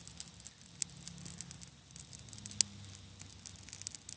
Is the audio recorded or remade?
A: recorded